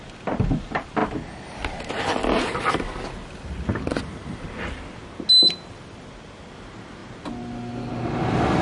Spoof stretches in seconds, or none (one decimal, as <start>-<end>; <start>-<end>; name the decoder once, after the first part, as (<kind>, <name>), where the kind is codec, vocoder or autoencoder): none

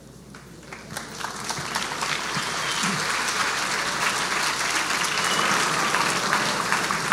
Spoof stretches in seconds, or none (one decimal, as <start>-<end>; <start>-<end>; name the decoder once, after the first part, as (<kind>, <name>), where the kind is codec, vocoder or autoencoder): none

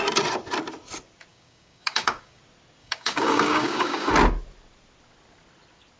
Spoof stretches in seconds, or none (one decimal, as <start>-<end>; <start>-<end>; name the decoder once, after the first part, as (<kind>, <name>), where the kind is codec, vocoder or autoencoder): 1.3-2.4 (codec, DAC); 2.8-4.1

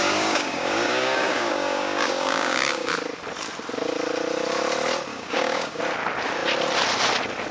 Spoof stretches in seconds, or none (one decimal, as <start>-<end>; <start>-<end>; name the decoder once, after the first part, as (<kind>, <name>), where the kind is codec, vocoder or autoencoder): 0.0-2.9 (codec, DAC); 5.1-5.8

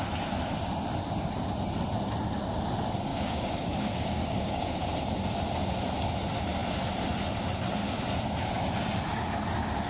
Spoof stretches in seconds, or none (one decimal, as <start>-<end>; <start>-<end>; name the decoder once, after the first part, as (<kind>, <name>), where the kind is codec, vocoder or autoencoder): 3.1-4.8 (codec, DAC)

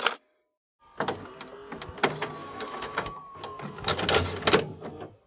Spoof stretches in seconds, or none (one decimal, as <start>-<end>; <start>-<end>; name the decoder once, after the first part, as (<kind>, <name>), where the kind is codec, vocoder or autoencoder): 2.4-3.2 (codec, DAC)